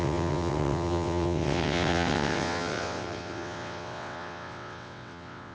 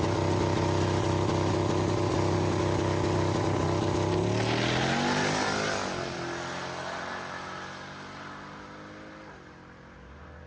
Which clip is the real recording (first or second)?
second